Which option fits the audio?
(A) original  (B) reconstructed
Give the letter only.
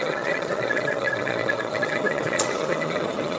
B